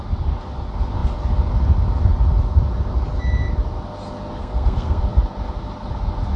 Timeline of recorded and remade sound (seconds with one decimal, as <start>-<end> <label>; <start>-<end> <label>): 0.0-4.4 recorded; 4.4-5.0 remade; 5.0-6.4 recorded